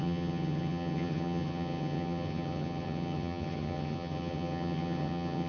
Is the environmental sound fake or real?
fake